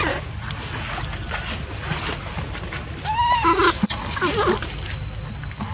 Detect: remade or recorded recorded